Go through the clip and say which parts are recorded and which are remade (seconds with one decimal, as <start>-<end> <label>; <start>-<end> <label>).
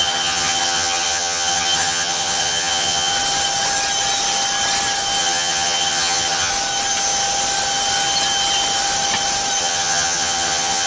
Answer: 0.0-3.1 remade; 3.1-5.2 recorded; 5.2-6.5 remade; 6.5-9.6 recorded; 9.6-10.9 remade